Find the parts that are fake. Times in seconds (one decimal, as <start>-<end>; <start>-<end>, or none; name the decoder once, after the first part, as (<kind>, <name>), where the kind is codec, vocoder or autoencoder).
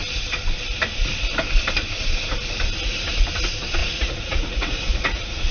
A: 3.8-5.5 (vocoder, Vocos)